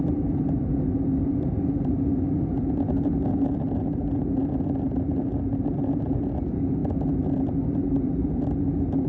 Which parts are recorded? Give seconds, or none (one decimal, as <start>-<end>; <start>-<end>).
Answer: 0.0-9.1